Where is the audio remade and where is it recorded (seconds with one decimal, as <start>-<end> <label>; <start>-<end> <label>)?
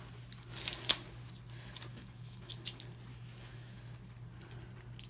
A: 0.0-1.9 recorded; 1.9-2.5 remade; 2.5-3.1 recorded; 3.1-3.8 remade; 3.8-5.1 recorded